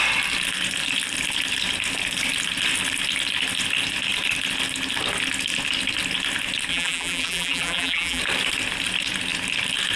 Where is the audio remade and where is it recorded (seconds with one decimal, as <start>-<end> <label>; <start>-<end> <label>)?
0.0-6.7 recorded; 6.7-8.2 remade; 8.2-10.0 recorded